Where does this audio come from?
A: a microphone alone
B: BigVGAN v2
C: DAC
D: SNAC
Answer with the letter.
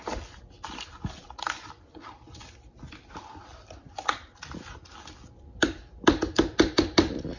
A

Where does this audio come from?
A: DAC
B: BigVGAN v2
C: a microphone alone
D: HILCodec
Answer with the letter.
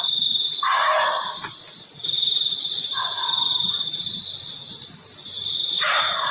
C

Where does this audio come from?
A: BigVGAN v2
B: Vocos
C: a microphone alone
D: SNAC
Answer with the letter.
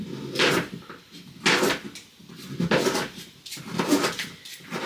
C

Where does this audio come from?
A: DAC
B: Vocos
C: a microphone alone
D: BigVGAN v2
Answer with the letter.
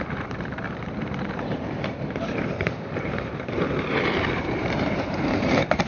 D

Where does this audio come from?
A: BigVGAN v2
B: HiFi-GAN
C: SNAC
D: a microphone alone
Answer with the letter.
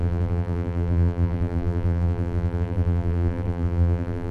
A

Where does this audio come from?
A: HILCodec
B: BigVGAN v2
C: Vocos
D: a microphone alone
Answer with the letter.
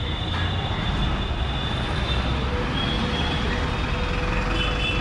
D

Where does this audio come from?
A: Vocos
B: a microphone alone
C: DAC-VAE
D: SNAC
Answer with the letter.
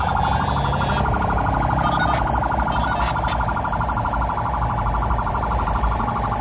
B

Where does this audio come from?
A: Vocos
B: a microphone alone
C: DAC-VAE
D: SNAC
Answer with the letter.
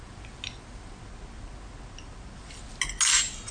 B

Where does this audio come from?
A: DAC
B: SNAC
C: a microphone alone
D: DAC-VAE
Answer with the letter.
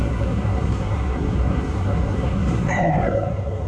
B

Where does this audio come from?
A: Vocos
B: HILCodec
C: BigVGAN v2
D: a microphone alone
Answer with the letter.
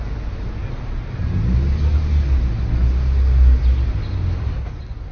D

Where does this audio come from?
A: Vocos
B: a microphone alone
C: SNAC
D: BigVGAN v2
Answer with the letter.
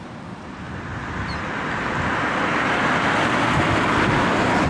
B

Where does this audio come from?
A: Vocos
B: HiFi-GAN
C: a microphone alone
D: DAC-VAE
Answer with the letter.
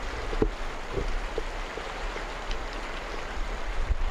C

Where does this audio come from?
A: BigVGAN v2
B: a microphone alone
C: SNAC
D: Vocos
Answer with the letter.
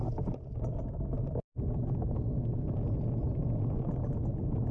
B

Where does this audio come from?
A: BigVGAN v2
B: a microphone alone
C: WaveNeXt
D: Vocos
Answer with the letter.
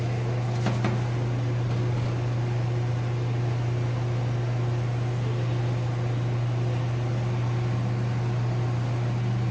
B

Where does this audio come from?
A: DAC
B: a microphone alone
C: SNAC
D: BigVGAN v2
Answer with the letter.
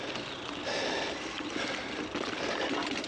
B